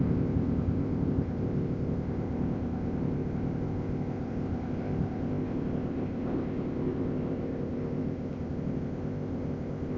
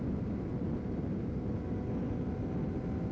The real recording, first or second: second